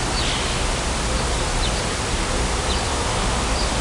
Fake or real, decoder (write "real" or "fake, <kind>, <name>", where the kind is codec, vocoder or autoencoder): real